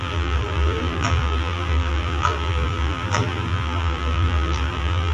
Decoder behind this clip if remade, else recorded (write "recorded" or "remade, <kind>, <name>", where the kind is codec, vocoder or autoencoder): remade, vocoder, BigVGAN v2